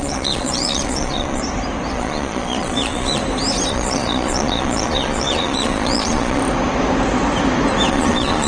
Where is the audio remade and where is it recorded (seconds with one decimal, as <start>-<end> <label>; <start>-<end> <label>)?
0.0-1.4 remade; 1.4-1.9 recorded; 1.9-3.2 remade; 3.2-3.7 recorded; 3.7-6.4 remade; 6.4-7.9 recorded; 7.9-8.5 remade